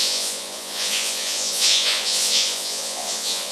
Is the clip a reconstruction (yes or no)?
yes